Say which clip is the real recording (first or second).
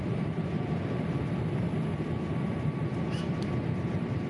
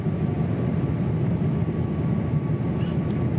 second